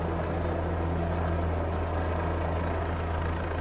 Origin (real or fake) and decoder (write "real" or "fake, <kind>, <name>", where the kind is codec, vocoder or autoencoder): real